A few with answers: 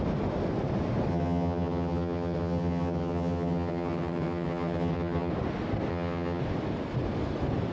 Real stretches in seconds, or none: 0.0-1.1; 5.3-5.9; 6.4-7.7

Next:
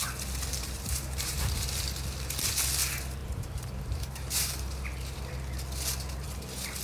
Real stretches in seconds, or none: 0.0-0.5; 1.5-3.2; 5.3-6.8

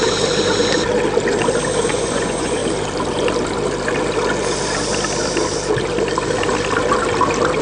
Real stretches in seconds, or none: 0.0-1.9; 2.6-7.6

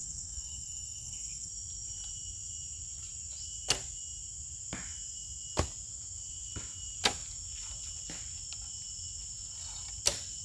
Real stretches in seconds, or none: 1.5-10.4

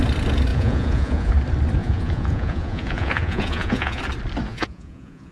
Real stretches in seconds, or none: 0.0-0.5; 1.3-1.8; 4.0-4.5

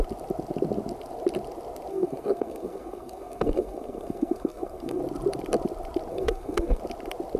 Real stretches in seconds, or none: 0.0-1.9; 5.0-6.1; 6.8-7.4

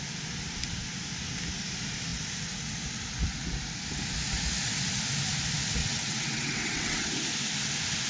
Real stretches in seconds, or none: 0.0-5.8; 7.1-8.1

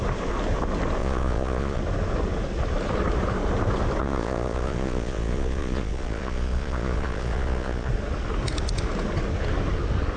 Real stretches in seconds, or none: 0.0-1.0; 1.8-4.0; 7.9-10.2